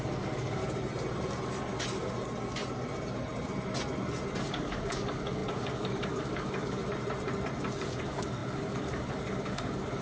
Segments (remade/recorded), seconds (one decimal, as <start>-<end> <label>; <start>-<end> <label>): 0.0-0.6 remade; 0.6-4.5 recorded; 4.5-6.8 remade; 6.8-7.8 recorded; 7.8-10.0 remade